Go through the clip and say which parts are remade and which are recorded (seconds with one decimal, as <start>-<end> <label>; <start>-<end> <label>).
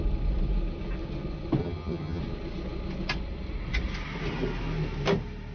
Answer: 0.0-1.6 recorded; 1.6-2.2 remade; 2.2-5.5 recorded